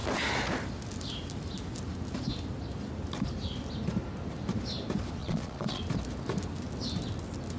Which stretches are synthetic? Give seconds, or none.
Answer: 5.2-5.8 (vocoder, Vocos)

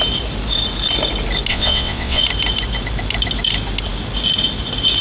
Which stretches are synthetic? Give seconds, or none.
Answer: 1.5-2.2 (vocoder, WaveNeXt)